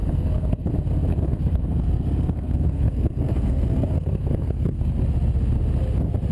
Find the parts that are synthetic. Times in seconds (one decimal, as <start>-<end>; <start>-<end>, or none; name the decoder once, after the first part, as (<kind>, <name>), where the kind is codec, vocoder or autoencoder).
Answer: 0.0-0.7 (codec, SNAC); 1.1-4.9

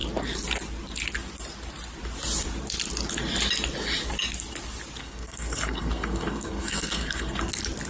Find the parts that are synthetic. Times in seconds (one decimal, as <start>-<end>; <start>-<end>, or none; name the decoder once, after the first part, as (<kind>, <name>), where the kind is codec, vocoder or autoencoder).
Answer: 5.0-7.5 (codec, SNAC)

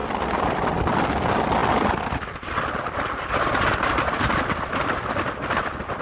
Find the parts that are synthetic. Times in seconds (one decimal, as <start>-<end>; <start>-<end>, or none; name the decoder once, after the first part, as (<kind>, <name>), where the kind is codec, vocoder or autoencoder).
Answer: none

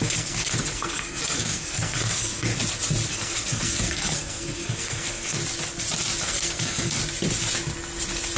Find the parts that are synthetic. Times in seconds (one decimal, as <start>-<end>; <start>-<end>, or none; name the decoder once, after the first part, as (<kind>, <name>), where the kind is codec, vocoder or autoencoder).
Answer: 0.0-2.5 (codec, SNAC); 3.1-5.4; 6.2-7.0

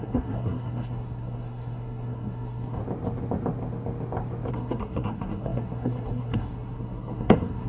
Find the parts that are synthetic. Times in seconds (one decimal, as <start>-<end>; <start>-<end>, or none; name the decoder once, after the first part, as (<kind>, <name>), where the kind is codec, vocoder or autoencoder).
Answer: 0.0-2.8 (codec, SNAC); 4.5-7.7

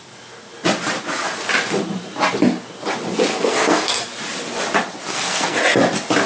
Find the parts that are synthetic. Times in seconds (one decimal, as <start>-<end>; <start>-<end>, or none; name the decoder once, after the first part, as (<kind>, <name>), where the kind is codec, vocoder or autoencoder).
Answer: 3.3-4.0 (codec, SNAC); 5.1-5.6

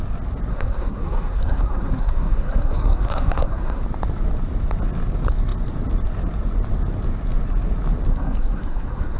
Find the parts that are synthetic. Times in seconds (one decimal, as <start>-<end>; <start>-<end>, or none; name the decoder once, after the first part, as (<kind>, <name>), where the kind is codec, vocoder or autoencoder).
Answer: 0.5-3.8 (codec, SNAC); 8.1-9.2